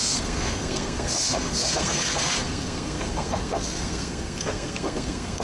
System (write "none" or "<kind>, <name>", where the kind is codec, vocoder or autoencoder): codec, SNAC